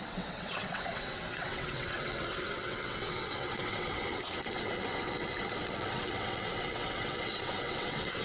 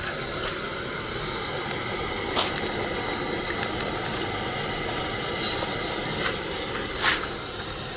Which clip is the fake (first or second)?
first